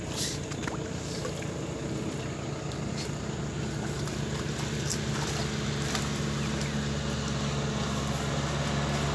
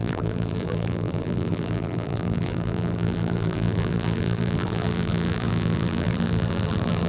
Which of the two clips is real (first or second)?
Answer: first